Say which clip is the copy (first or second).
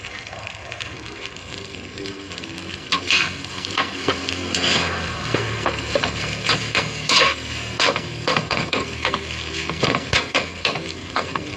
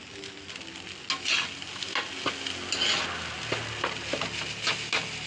first